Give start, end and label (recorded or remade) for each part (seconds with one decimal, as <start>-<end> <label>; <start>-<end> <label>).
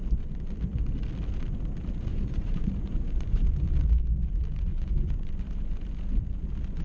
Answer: 0.0-2.1 recorded; 2.1-3.4 remade; 3.4-4.7 recorded; 4.7-5.3 remade; 5.3-6.8 recorded